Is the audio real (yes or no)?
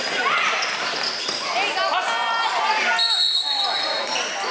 yes